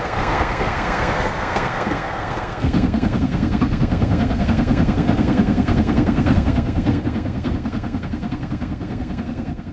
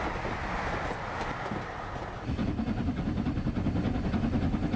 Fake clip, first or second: first